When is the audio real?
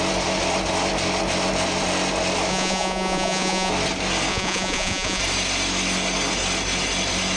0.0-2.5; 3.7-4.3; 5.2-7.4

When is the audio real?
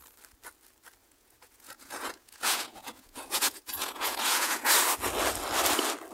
0.0-1.0; 4.7-6.1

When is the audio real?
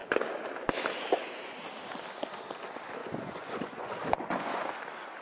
0.0-3.0; 4.6-5.2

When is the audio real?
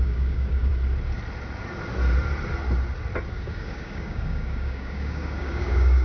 0.7-3.3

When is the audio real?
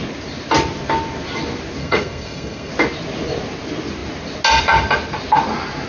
0.0-1.8; 2.7-5.9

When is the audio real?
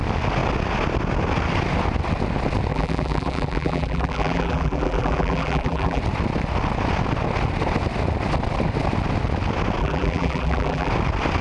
0.0-2.7; 6.0-9.8; 10.9-11.4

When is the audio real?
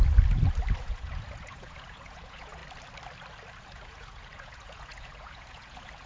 0.0-0.8; 2.6-3.6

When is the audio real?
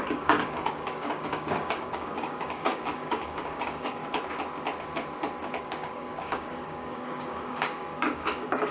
4.0-5.6